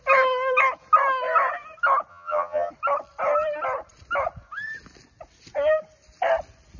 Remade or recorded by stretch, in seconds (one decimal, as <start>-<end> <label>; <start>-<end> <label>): 0.0-2.1 recorded; 2.1-2.7 remade; 2.7-6.8 recorded